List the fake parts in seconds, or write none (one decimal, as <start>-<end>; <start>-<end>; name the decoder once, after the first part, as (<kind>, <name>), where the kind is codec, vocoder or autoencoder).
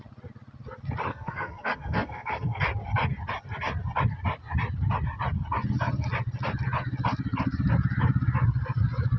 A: 1.1-2.6 (codec, SNAC)